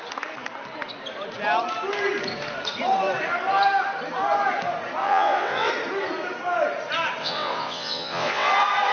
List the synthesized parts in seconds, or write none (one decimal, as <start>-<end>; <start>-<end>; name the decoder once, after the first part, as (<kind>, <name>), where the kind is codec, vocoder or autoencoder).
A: 5.0-5.7 (vocoder, WaveNeXt); 7.2-8.5